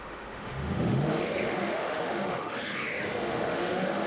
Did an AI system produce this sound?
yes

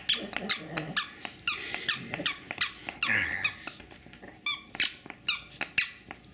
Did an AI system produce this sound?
no